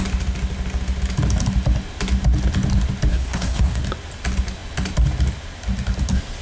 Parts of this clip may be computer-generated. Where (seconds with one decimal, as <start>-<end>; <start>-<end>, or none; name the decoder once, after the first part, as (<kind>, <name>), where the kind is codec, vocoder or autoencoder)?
3.1-3.8 (codec, SNAC)